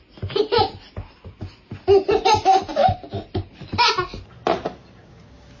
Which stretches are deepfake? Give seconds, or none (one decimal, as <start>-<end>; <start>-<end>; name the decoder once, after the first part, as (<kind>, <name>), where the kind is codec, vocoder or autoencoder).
4.4-5.1 (vocoder, BigVGAN v2)